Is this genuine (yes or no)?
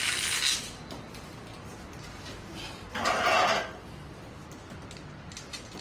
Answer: yes